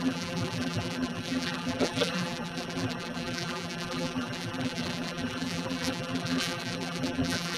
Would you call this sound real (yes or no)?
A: no